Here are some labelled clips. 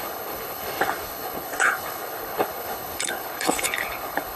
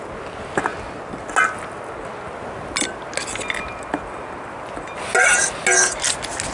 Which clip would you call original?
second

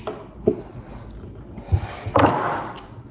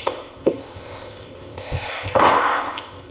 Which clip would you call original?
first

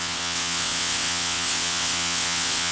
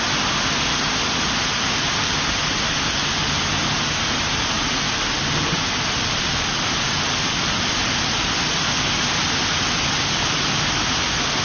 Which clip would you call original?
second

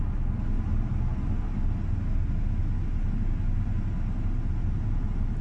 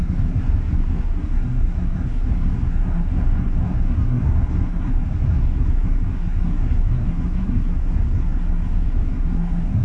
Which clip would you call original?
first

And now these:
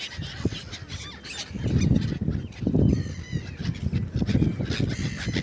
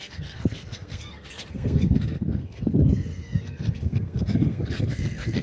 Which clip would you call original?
first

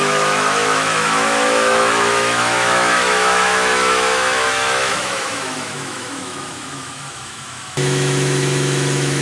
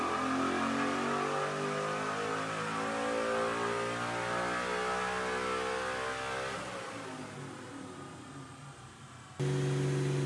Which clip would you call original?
second